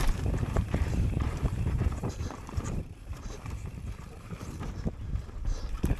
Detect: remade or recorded remade